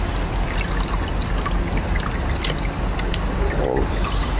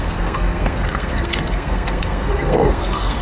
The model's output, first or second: second